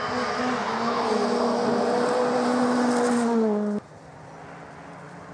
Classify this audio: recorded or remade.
recorded